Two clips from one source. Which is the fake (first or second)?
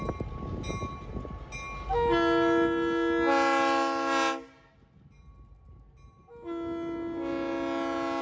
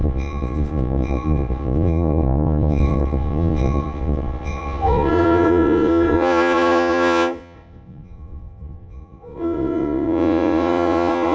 second